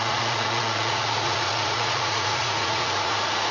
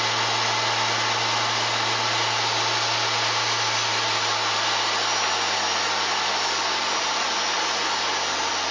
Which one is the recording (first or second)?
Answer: second